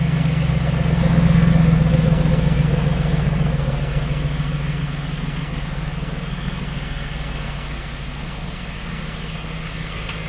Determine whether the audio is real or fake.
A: fake